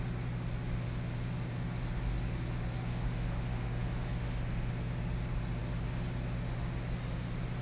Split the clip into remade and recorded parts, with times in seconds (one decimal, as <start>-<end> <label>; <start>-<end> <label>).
0.0-2.9 recorded; 2.9-4.7 remade; 4.7-7.6 recorded